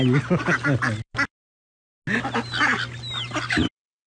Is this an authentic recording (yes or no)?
yes